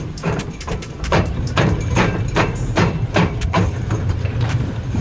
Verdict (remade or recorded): remade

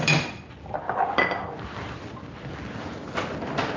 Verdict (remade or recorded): recorded